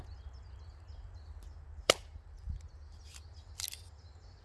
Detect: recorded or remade recorded